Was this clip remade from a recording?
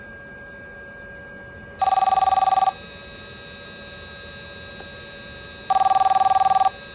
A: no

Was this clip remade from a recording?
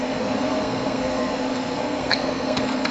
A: yes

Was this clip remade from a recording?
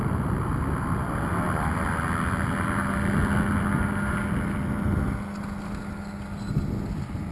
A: no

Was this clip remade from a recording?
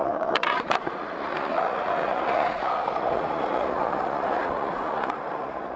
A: yes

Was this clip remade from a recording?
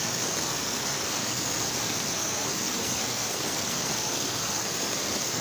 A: yes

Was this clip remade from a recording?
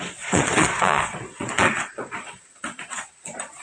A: yes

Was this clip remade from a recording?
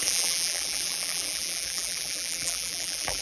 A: yes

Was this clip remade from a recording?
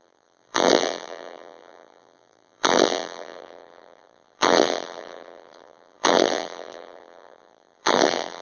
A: yes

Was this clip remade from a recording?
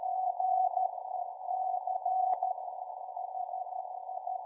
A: yes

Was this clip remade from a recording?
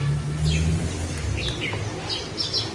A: no